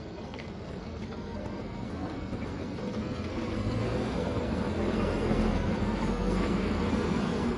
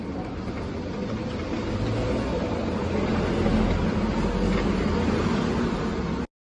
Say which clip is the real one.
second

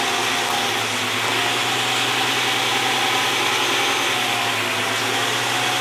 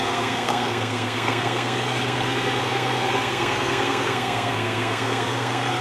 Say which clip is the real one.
first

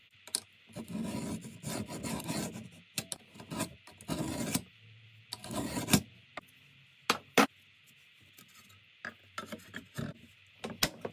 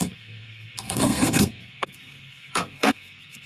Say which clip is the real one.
first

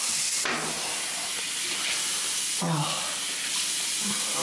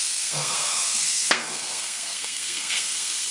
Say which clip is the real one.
first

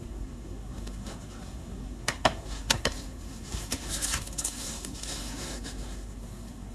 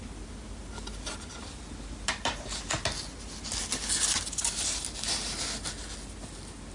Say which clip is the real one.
second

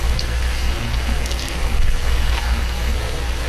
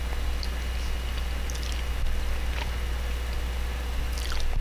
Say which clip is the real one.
second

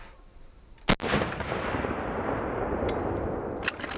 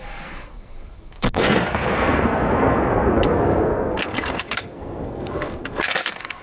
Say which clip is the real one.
first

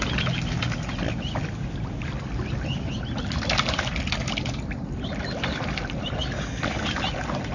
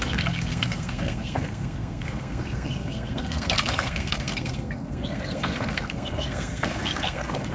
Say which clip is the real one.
first